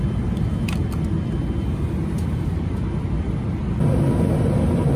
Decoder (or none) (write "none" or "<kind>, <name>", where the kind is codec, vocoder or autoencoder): none